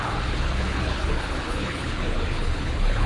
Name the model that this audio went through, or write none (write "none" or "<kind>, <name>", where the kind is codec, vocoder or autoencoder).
codec, HILCodec